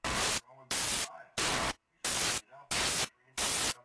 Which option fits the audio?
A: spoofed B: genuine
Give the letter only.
A